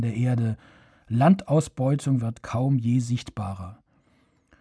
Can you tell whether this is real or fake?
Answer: real